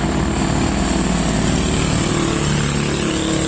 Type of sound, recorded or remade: recorded